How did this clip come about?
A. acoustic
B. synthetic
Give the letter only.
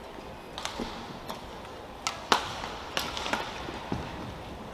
A